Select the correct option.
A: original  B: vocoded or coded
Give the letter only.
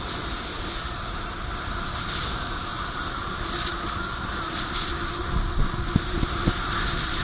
A